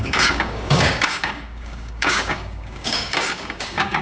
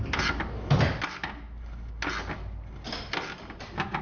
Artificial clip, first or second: first